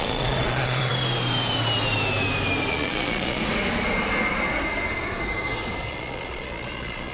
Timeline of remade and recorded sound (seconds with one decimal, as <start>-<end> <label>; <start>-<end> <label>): 0.0-0.9 remade; 0.9-2.7 recorded; 2.7-3.4 remade; 3.4-5.9 recorded; 5.9-7.1 remade